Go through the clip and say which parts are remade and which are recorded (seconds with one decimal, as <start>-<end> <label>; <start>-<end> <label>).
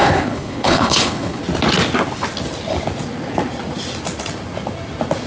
0.0-1.4 remade; 1.4-5.3 recorded